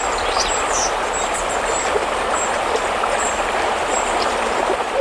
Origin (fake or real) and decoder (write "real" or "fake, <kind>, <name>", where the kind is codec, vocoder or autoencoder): fake, vocoder, BigVGAN v2